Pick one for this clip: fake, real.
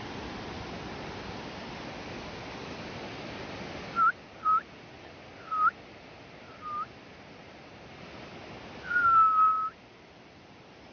real